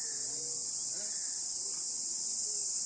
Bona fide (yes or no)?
yes